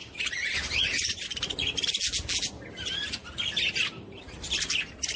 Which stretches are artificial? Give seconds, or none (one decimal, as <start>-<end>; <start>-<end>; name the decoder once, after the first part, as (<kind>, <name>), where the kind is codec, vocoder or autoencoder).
0.0-1.1 (vocoder, BigVGAN v2); 3.2-4.2